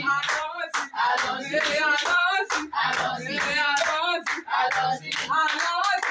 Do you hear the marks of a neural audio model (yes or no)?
yes